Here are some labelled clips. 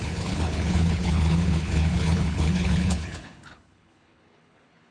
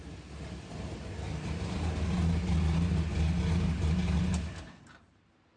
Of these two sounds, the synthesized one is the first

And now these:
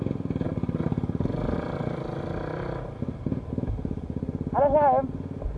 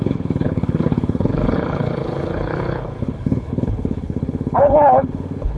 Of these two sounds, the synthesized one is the second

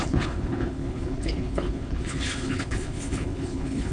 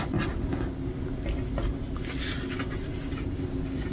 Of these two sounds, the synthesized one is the first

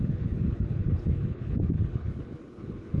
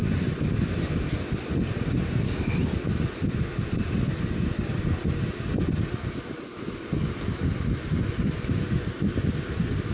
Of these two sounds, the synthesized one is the first